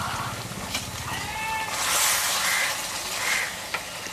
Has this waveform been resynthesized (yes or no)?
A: no